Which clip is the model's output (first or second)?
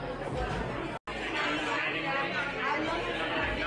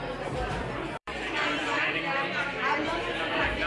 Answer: second